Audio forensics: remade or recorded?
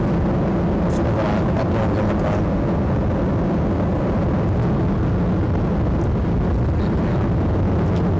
recorded